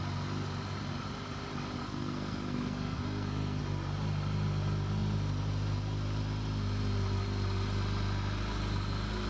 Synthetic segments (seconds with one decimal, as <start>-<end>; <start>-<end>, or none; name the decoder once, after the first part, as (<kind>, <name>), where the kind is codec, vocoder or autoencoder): 1.8-3.6 (codec, SNAC)